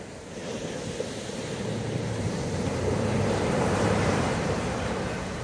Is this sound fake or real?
fake